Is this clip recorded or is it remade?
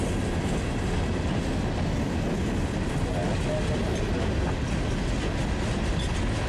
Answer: recorded